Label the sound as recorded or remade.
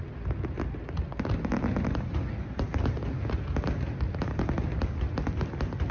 recorded